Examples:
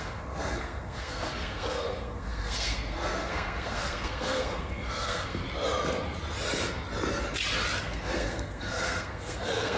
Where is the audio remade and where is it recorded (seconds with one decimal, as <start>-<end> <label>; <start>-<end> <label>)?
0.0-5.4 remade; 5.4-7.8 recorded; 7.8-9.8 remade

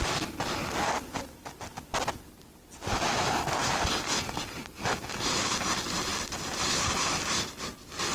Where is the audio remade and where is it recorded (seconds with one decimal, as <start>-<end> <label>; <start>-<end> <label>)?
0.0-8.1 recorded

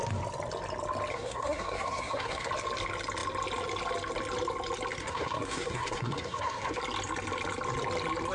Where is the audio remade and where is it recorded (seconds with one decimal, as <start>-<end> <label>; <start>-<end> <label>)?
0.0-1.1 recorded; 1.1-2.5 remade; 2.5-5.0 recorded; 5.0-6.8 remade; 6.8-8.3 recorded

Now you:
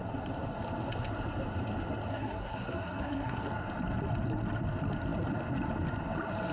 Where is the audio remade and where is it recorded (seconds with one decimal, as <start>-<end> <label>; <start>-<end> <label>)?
0.0-2.1 recorded; 2.1-3.5 remade; 3.5-6.5 recorded